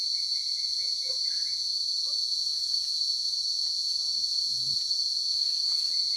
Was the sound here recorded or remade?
remade